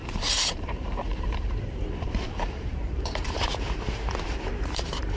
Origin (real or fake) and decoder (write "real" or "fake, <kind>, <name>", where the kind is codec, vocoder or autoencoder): fake, vocoder, BigVGAN v2